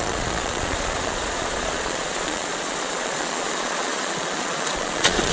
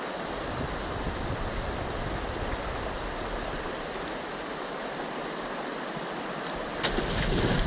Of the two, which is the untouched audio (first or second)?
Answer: second